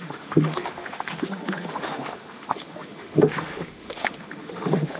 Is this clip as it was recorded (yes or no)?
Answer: no